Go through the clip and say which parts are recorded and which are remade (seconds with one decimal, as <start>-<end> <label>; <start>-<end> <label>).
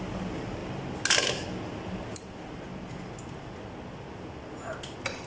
0.0-5.3 recorded